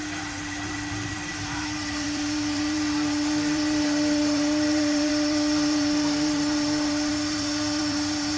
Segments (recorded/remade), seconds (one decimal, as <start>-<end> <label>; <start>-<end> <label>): 0.0-8.4 remade